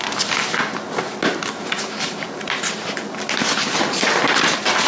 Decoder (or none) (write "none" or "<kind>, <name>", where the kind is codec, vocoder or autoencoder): none